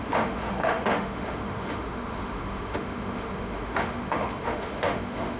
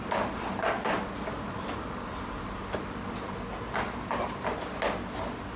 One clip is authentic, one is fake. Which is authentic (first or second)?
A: second